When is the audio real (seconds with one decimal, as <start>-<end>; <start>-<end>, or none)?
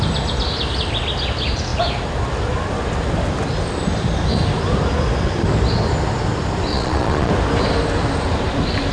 0.0-6.7; 7.3-8.9